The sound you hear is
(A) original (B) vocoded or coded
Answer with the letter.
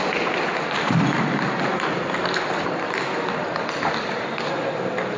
A